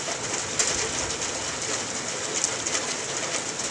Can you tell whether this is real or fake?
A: real